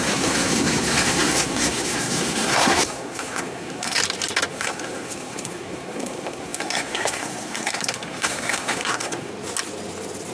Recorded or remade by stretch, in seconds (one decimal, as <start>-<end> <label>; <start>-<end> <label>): 0.0-4.0 remade; 4.0-4.5 recorded; 4.5-9.3 remade; 9.3-10.3 recorded